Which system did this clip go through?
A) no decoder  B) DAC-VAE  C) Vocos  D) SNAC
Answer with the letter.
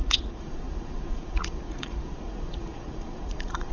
C